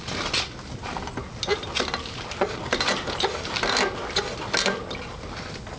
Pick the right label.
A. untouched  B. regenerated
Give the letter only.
A